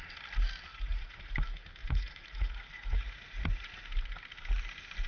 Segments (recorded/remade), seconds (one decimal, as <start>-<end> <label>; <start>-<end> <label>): 0.0-0.7 recorded; 0.7-1.3 remade; 1.3-1.8 recorded; 1.8-3.8 remade; 3.8-5.1 recorded